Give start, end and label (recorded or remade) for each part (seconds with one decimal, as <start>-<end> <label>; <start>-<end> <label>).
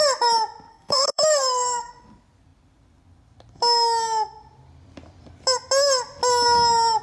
0.0-0.7 recorded; 0.7-1.9 remade; 1.9-7.0 recorded